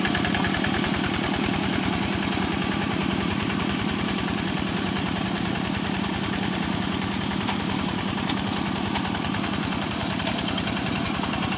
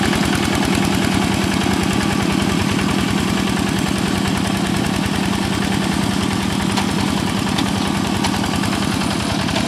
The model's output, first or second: first